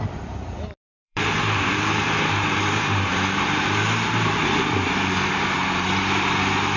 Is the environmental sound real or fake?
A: fake